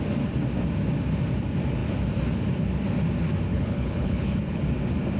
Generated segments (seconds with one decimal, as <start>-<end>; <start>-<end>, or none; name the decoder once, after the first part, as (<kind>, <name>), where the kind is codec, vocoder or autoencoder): 3.5-4.6 (codec, HILCodec)